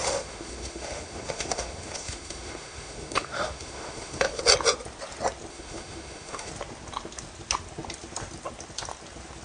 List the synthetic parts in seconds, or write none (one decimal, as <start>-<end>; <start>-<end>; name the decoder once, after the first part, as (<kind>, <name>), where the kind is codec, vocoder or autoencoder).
0.0-4.4 (autoencoder, DAC-VAE); 5.5-6.5